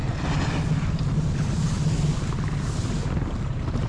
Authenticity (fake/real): real